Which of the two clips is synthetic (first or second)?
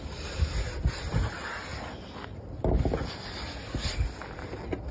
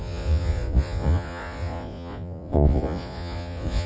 second